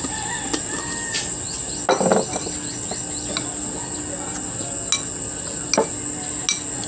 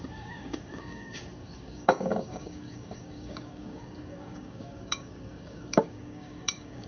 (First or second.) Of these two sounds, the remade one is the second